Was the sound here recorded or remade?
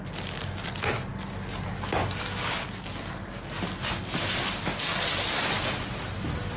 recorded